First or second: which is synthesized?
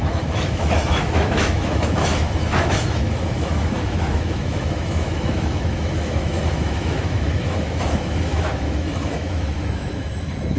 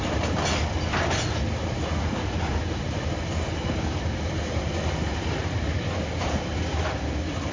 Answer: first